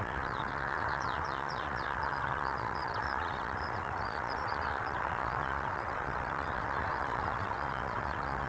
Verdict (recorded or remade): remade